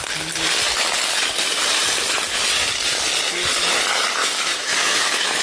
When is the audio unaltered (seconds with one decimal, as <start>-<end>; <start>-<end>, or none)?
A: 0.0-4.2